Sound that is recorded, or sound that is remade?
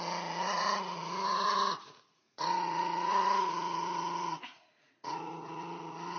remade